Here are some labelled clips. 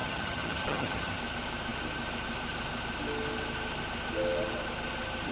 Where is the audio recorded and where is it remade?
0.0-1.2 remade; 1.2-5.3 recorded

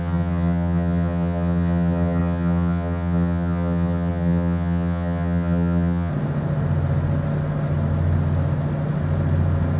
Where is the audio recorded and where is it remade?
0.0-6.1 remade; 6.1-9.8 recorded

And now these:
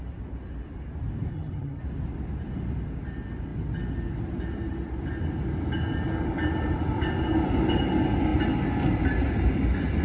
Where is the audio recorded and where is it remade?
0.0-1.3 recorded; 1.3-1.8 remade; 1.8-10.0 recorded

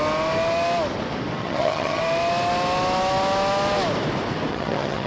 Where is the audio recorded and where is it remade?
0.0-1.4 recorded; 1.4-2.0 remade; 2.0-4.5 recorded; 4.5-5.1 remade